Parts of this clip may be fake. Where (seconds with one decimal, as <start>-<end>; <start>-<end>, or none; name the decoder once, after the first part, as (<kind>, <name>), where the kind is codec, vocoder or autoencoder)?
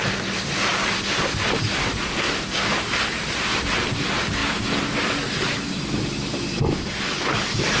none